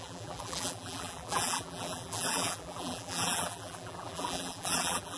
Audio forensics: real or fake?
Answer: fake